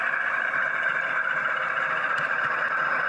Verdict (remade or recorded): remade